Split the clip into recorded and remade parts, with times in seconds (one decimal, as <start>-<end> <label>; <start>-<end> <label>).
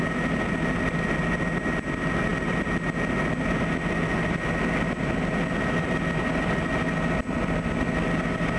0.0-8.6 recorded